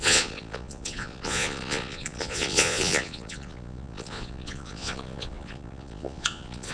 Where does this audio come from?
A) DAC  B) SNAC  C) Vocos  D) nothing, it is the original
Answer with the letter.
C